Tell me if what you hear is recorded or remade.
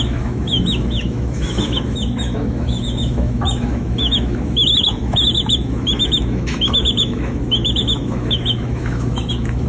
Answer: remade